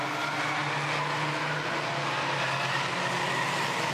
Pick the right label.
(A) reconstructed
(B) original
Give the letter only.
B